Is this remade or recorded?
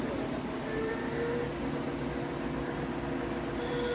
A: recorded